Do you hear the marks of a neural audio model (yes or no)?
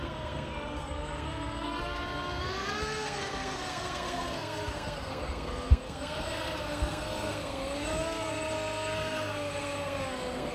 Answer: yes